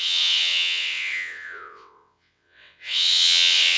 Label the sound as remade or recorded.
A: remade